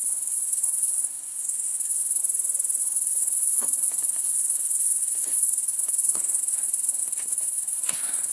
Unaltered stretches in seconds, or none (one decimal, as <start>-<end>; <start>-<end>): 2.2-2.8